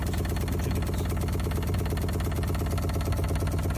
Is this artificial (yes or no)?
no